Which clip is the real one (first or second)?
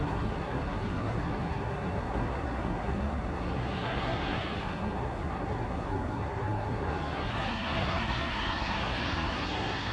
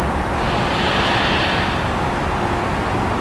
second